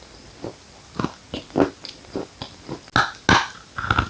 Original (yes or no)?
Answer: yes